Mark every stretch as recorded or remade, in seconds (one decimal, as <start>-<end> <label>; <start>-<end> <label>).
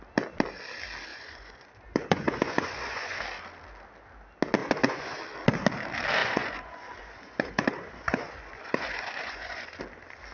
0.0-1.1 recorded; 1.1-3.2 remade; 3.2-4.6 recorded; 4.6-5.2 remade; 5.2-6.2 recorded; 6.2-9.8 remade; 9.8-10.3 recorded